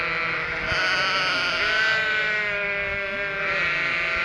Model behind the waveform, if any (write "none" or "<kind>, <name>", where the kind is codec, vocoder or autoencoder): none